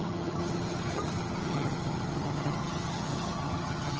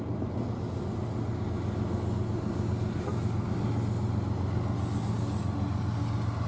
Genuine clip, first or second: second